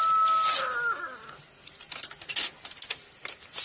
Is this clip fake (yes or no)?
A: no